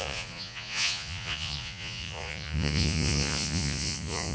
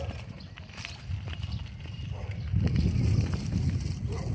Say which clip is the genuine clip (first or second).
second